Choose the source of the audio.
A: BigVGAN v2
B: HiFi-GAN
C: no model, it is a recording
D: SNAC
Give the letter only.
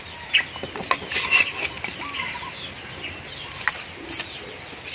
C